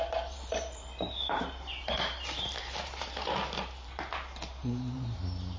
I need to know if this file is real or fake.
fake